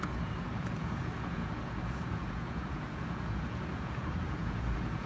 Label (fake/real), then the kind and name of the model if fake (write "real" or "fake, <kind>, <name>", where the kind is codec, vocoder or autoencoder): fake, vocoder, Vocos